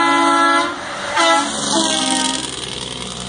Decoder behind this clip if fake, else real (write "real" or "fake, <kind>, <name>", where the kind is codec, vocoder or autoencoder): real